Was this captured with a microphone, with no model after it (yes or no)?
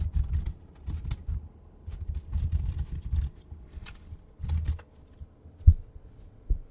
yes